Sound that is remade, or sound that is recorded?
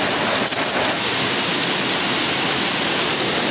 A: recorded